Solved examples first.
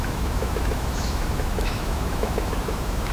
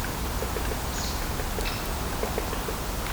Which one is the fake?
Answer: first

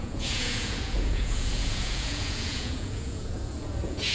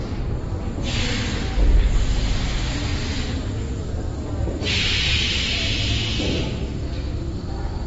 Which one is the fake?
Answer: first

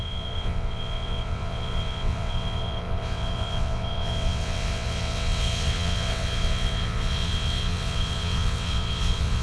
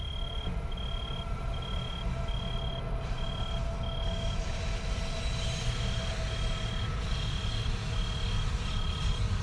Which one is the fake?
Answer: first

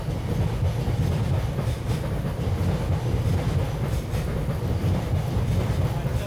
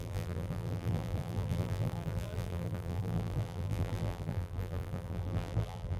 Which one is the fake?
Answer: second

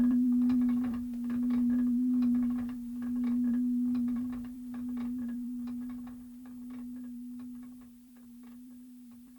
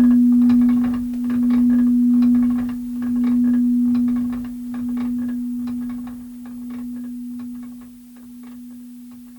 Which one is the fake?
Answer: first